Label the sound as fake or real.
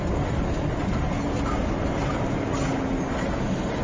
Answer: real